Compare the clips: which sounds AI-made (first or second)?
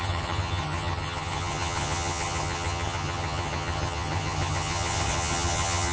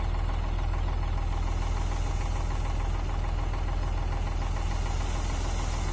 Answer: first